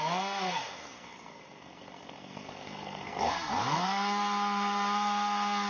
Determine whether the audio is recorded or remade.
remade